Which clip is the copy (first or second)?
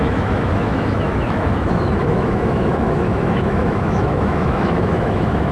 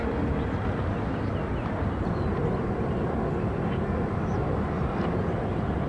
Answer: first